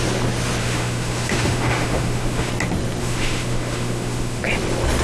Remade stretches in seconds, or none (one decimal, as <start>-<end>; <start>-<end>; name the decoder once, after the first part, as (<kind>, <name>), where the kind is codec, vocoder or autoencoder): 0.6-2.5 (autoencoder, DAC-VAE); 3.0-4.4